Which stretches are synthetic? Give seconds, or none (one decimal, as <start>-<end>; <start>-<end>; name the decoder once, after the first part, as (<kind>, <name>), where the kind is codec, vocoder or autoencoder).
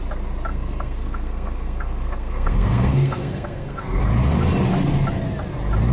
0.5-4.0 (codec, SNAC)